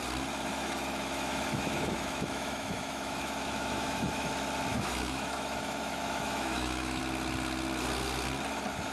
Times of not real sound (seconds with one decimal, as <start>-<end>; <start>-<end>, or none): 0.5-4.3; 4.7-7.0